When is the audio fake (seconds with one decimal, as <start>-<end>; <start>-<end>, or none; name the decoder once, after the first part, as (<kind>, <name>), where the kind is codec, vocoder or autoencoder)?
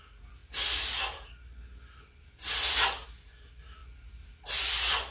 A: none